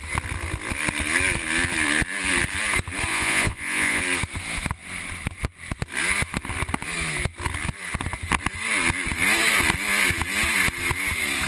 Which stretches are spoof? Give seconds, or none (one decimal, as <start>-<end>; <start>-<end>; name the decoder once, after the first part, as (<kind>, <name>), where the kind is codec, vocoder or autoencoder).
3.1-4.0 (vocoder, Vocos)